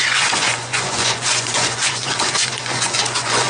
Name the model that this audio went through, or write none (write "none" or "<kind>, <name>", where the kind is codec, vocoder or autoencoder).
vocoder, Vocos